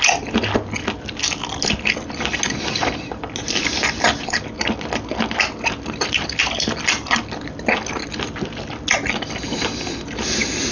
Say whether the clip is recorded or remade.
recorded